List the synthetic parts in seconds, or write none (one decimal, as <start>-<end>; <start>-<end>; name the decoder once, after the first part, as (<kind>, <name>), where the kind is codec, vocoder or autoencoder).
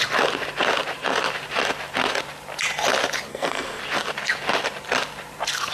3.3-3.8 (codec, SNAC)